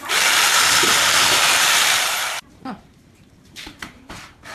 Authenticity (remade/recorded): remade